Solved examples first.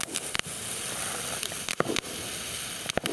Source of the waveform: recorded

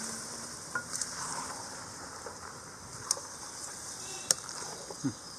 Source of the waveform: remade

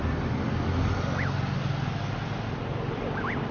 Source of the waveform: recorded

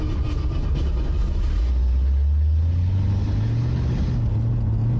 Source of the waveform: recorded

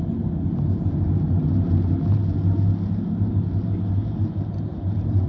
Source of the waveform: recorded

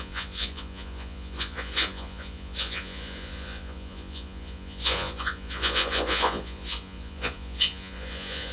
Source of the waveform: remade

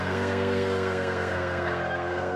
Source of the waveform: remade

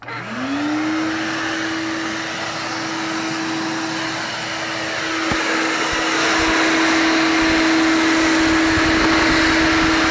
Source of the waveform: recorded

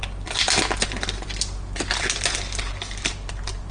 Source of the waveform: recorded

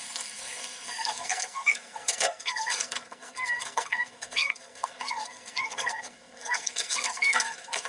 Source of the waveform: remade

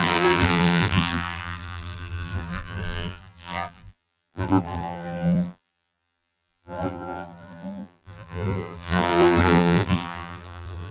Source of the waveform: remade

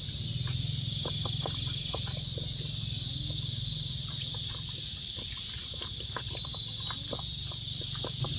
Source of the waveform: recorded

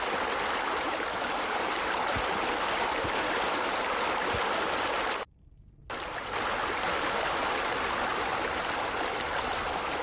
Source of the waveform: recorded